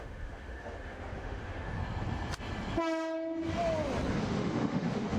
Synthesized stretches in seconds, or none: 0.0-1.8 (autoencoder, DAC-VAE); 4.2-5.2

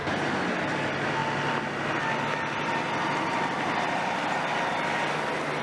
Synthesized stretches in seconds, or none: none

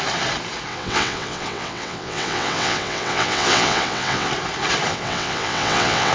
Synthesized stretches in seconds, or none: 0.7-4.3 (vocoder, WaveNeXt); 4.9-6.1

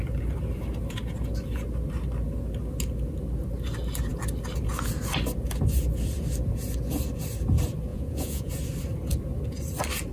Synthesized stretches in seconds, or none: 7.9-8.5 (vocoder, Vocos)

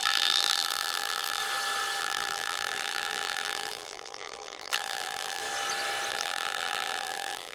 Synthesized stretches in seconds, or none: 0.0-1.4 (vocoder, BigVGAN v2); 2.0-5.4; 6.1-7.5

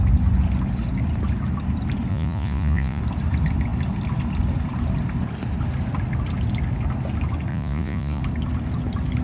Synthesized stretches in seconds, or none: 2.1-3.0 (vocoder, Vocos); 7.5-8.2

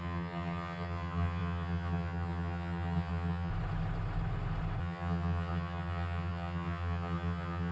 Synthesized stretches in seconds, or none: 0.0-3.5 (vocoder, HiFi-GAN); 4.8-7.7